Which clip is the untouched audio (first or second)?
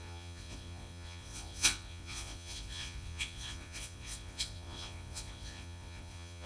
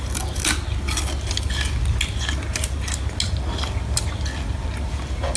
second